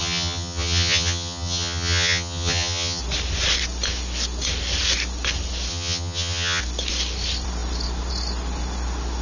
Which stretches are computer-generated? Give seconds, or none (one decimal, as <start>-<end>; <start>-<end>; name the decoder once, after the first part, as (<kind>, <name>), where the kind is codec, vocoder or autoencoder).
0.0-3.0 (vocoder, HiFi-GAN); 5.7-6.6

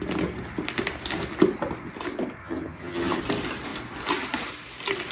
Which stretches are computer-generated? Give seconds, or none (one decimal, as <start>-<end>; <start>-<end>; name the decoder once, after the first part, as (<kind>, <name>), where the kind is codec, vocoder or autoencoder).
2.4-3.2 (vocoder, HiFi-GAN)

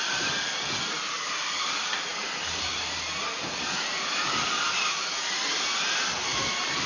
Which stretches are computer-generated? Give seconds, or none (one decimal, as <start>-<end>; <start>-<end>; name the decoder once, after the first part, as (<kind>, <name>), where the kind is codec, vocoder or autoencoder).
none